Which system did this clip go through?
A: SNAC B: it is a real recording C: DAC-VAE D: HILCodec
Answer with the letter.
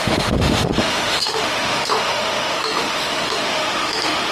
C